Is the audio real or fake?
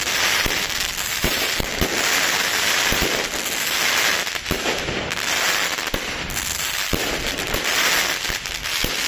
real